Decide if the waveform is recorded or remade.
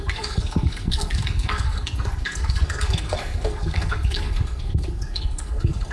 remade